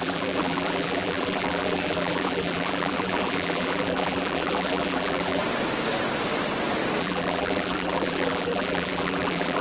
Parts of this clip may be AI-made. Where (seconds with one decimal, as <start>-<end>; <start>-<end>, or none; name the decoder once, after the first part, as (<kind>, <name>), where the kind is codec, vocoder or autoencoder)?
0.0-5.4 (vocoder, BigVGAN v2); 7.0-9.6